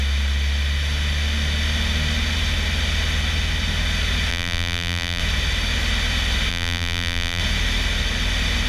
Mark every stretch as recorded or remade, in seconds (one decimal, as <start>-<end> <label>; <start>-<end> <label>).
0.0-4.3 recorded; 4.3-5.2 remade; 5.2-6.5 recorded; 6.5-7.4 remade; 7.4-8.7 recorded